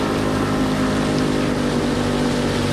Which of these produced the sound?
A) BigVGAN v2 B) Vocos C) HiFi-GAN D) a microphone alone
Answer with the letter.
D